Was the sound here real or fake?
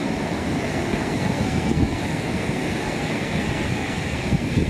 fake